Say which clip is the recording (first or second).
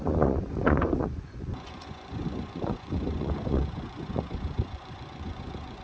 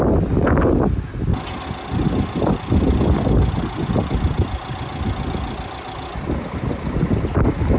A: second